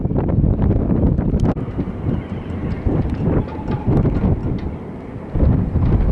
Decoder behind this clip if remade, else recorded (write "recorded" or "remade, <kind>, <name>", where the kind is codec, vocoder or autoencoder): remade, vocoder, BigVGAN v2